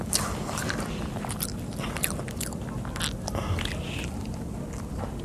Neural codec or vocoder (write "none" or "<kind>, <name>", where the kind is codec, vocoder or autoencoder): none